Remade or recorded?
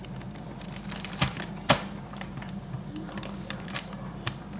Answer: recorded